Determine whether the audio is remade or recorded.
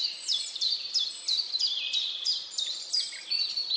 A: remade